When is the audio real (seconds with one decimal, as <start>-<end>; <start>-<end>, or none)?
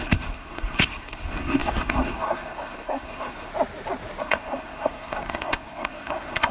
3.5-4.2